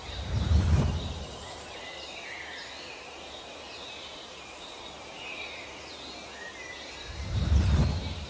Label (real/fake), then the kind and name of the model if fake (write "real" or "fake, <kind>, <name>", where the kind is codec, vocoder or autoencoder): fake, vocoder, BigVGAN v2